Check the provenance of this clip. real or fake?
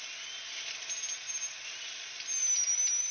real